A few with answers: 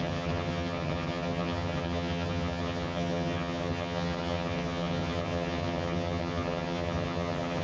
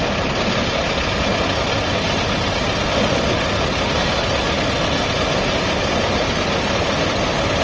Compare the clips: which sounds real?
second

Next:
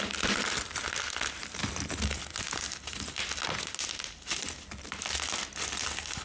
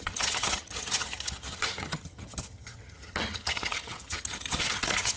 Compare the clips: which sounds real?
first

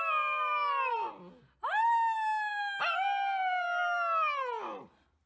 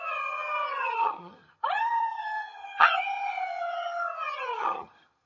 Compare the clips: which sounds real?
first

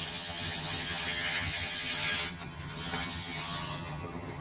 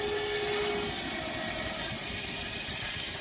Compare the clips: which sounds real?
second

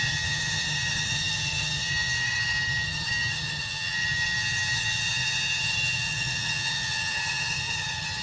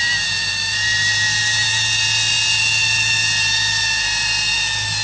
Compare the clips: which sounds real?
second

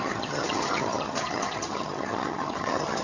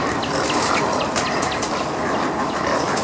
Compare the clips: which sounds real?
second